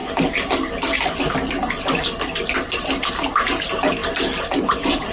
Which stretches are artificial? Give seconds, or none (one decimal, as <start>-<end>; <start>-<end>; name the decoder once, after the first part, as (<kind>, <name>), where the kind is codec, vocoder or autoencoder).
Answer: none